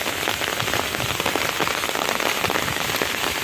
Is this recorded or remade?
recorded